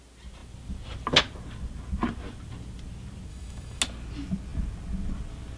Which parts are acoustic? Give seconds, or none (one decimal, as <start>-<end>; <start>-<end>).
0.0-3.3; 3.8-5.6